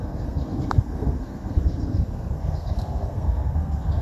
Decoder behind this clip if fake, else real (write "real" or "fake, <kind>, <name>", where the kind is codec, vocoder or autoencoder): fake, codec, SNAC